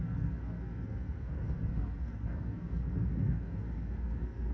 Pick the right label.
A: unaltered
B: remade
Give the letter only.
B